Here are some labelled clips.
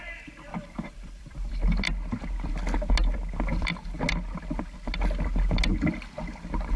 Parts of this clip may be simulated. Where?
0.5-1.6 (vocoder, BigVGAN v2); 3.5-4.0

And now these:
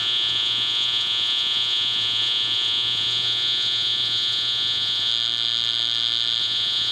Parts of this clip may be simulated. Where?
0.0-5.1 (vocoder, Vocos); 6.4-6.9

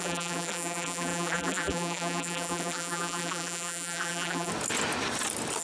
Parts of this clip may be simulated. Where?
0.0-4.5 (vocoder, BigVGAN v2)

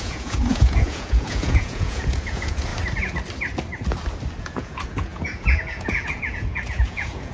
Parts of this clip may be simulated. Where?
0.0-2.7 (vocoder, Vocos); 4.4-7.3

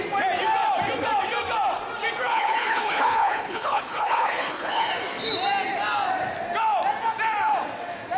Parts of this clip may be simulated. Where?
2.3-4.9 (codec, HILCodec)

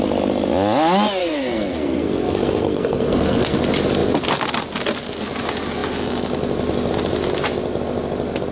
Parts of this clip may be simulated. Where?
1.2-3.6 (codec, SNAC)

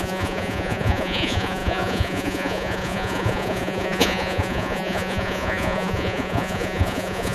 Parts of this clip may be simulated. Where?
0.0-7.3 (vocoder, Vocos)

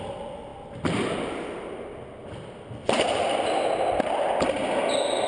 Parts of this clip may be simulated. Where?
none